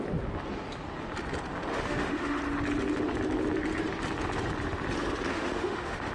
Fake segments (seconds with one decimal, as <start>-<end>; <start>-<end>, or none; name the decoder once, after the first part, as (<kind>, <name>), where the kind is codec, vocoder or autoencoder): 1.7-2.4 (autoencoder, DAC-VAE); 5.3-6.1